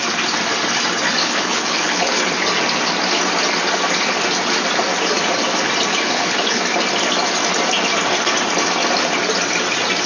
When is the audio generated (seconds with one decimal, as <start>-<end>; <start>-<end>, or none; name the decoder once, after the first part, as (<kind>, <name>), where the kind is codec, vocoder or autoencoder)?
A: 1.2-2.2 (codec, HILCodec); 5.9-6.6

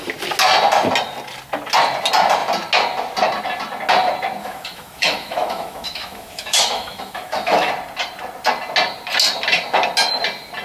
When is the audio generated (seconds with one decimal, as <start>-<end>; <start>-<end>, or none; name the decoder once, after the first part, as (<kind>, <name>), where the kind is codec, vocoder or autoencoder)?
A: 4.4-7.7 (autoencoder, DAC-VAE)